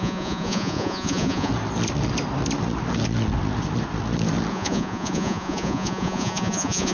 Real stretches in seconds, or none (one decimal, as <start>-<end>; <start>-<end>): 1.5-4.5